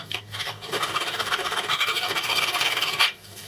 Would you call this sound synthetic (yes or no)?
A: yes